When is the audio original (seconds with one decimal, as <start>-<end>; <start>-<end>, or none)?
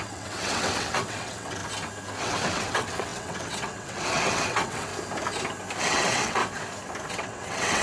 1.6-2.2; 4.9-5.8; 6.4-7.1